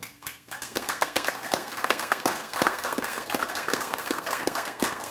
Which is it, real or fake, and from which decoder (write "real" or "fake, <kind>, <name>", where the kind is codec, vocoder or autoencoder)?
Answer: fake, codec, SNAC